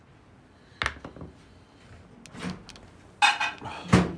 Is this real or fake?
real